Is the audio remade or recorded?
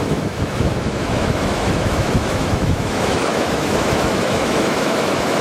remade